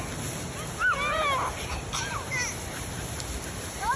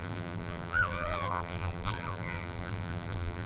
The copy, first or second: second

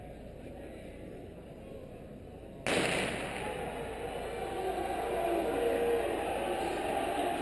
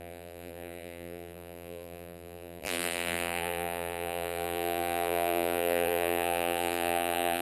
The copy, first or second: second